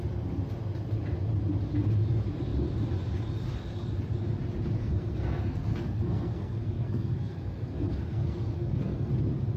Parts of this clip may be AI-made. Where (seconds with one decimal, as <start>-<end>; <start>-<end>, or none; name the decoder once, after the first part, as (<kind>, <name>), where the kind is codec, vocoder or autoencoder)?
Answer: 4.8-9.1 (codec, SNAC)